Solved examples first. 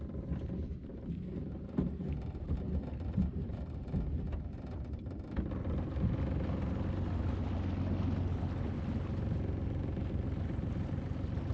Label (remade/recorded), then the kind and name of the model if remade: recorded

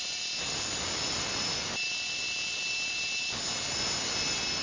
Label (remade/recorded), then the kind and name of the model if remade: recorded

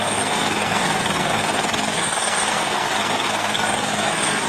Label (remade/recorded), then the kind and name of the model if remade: remade, codec, SNAC